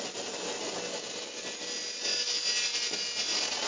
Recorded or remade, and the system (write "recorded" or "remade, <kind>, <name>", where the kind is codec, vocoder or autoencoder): recorded